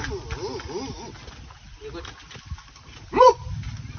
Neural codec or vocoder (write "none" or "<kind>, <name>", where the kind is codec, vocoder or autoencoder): none